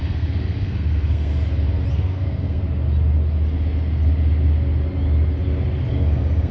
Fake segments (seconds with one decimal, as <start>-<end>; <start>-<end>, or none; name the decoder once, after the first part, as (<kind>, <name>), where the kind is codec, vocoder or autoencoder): 0.0-1.3 (codec, SNAC); 1.9-2.6; 5.9-6.5